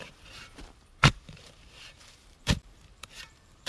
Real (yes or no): no